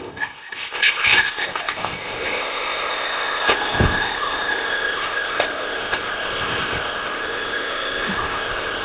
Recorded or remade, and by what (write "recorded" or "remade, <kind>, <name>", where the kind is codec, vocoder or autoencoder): remade, codec, ZipCodec